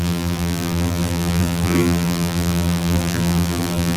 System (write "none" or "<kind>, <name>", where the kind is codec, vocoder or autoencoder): vocoder, BigVGAN v2